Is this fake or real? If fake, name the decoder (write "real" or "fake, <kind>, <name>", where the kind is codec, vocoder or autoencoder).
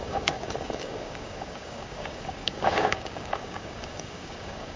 fake, codec, DAC